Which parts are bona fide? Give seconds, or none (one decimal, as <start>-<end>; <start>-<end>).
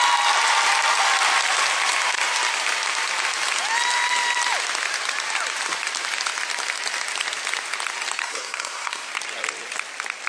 0.0-8.2; 9.1-10.3